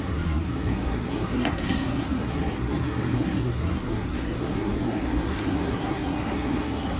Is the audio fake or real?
fake